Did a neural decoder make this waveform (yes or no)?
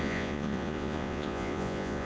yes